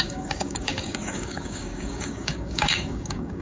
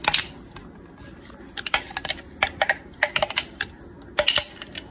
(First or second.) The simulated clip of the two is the first